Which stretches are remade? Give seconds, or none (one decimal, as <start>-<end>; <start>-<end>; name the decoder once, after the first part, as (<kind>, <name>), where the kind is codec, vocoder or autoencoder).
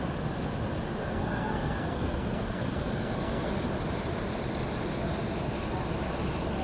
1.0-3.5 (codec, SNAC)